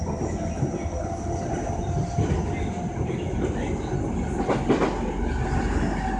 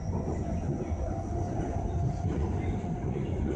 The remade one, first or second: second